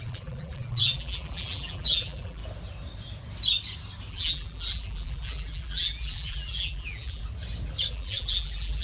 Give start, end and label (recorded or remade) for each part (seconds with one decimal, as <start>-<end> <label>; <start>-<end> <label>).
0.0-2.4 remade; 2.4-4.1 recorded; 4.1-7.2 remade; 7.2-7.9 recorded; 7.9-8.8 remade